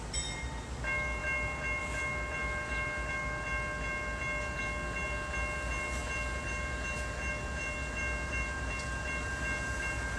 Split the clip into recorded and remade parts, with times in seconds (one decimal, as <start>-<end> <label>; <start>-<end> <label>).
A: 0.0-10.2 recorded

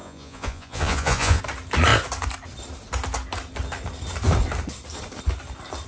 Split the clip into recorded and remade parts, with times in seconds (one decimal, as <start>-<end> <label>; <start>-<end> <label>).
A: 0.0-1.4 remade; 1.4-5.9 recorded

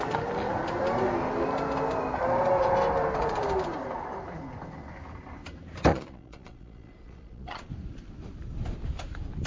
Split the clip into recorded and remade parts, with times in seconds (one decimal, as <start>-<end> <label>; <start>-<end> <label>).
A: 0.0-5.9 recorded; 5.9-7.7 remade; 7.7-9.5 recorded

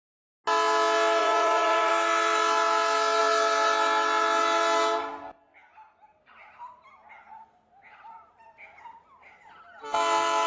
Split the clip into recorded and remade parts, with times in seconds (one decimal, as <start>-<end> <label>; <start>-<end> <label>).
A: 0.0-1.2 recorded; 1.2-1.9 remade; 1.9-10.5 recorded

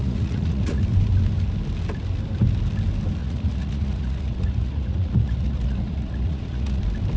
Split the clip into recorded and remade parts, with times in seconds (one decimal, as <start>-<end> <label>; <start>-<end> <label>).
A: 0.0-0.8 remade; 0.8-3.2 recorded; 3.2-6.8 remade; 6.8-7.2 recorded

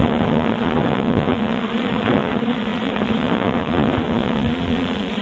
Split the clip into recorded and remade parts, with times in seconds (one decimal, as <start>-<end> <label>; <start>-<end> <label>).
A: 0.0-5.2 remade